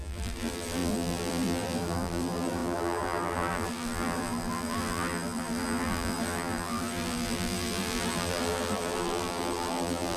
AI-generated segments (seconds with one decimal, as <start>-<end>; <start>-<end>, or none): 0.0-10.2